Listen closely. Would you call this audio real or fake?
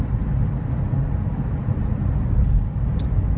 real